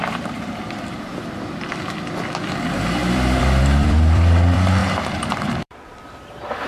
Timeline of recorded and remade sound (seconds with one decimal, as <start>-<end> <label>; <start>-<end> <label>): 0.0-4.8 remade; 4.8-5.4 recorded; 5.4-6.7 remade